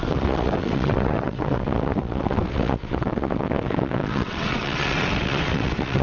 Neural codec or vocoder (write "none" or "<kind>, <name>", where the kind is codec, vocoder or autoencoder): vocoder, WaveNeXt